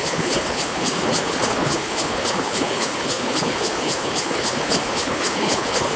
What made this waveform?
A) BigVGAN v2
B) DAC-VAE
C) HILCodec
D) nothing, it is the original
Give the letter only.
C